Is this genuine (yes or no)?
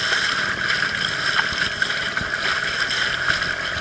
yes